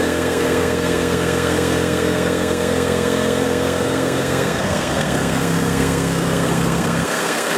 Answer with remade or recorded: remade